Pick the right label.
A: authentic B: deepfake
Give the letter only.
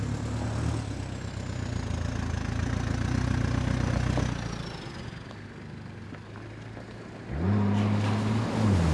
A